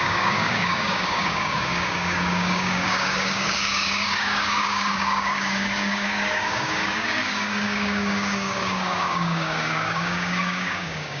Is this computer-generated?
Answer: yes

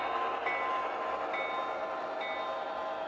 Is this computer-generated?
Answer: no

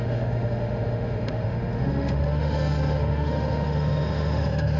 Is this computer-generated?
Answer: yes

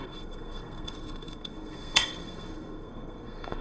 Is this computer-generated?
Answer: yes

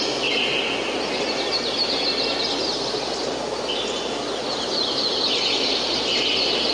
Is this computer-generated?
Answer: no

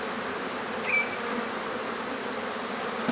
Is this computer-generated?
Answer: no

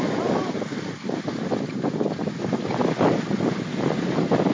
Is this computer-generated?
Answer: no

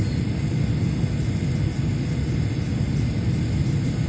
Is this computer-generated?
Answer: no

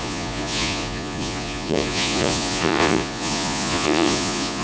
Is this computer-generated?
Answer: yes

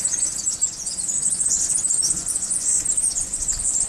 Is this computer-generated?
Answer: yes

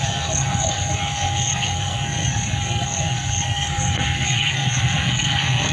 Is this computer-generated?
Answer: yes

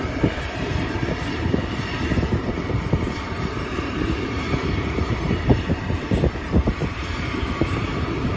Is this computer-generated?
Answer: yes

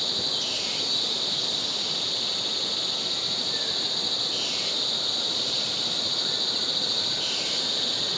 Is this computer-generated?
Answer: no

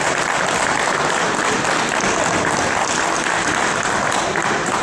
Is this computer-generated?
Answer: no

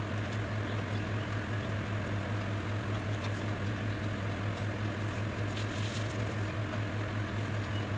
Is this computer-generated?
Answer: no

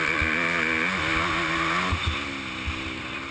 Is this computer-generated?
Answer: no